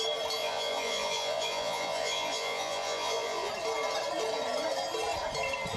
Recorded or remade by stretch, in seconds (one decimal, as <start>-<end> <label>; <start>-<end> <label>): 0.0-0.4 recorded; 0.4-3.5 remade; 3.5-5.8 recorded